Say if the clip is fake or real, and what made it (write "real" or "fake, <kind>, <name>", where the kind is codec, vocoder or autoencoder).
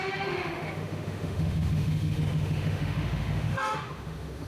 fake, autoencoder, DAC-VAE